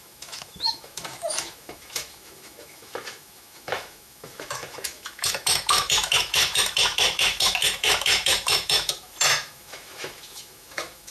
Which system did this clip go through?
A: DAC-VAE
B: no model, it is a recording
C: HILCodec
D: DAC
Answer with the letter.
A